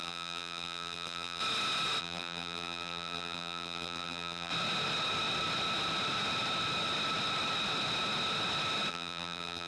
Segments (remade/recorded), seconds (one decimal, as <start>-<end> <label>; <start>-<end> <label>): 0.0-1.4 remade; 1.4-2.0 recorded; 2.0-4.5 remade; 4.5-8.9 recorded; 8.9-9.7 remade